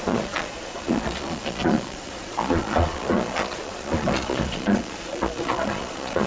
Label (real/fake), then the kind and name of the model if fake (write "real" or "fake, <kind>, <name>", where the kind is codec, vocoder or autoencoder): fake, vocoder, Vocos